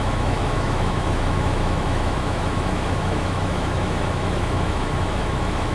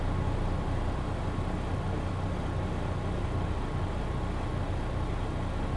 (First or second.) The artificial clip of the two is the first